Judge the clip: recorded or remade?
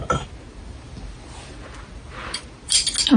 recorded